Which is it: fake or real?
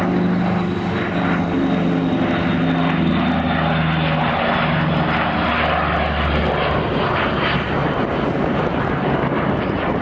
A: real